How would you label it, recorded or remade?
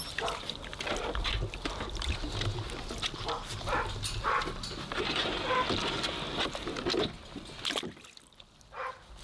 recorded